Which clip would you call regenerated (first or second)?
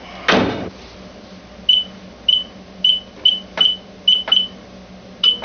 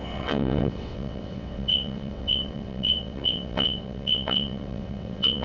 second